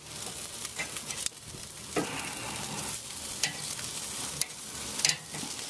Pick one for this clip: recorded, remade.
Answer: recorded